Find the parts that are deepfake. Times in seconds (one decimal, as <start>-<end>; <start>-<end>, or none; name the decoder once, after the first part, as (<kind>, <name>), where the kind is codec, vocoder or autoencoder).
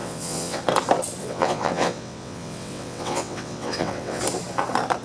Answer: 0.0-0.6 (vocoder, WaveNeXt); 1.2-4.2